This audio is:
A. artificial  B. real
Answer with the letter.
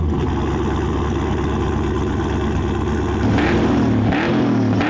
B